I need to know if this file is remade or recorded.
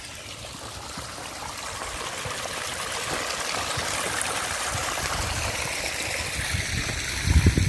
recorded